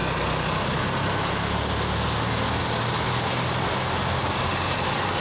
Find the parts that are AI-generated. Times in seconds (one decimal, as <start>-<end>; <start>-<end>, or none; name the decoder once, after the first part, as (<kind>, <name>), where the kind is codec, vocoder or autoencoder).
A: none